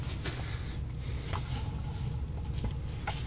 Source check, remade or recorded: recorded